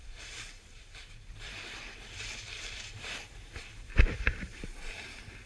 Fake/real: fake